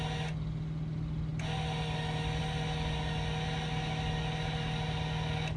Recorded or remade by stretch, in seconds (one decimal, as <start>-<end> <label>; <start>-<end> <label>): 0.0-5.6 recorded